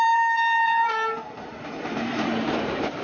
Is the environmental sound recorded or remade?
remade